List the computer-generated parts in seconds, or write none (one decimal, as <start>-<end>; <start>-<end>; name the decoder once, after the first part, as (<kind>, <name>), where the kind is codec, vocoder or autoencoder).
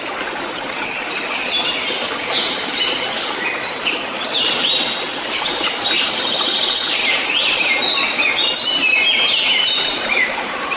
8.8-10.8 (vocoder, BigVGAN v2)